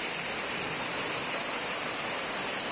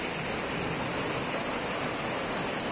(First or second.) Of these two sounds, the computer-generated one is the first